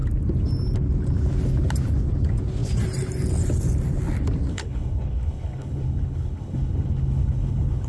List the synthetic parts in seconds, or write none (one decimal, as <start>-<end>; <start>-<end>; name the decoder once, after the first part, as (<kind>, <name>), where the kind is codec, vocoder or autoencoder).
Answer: 4.5-7.9 (codec, HILCodec)